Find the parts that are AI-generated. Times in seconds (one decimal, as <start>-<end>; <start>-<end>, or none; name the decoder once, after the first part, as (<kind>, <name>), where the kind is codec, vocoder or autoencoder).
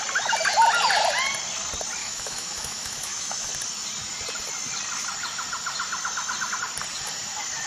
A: 2.0-3.5 (autoencoder, DAC-VAE)